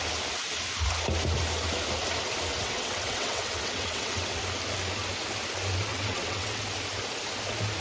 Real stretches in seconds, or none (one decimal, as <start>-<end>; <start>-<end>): 0.0-2.5; 4.4-5.9; 6.6-7.8